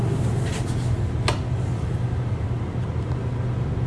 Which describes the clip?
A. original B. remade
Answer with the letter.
A